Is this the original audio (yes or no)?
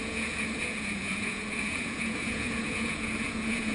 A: no